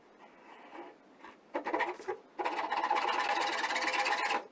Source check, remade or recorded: recorded